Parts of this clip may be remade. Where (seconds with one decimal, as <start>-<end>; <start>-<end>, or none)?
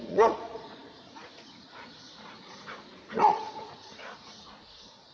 0.0-5.1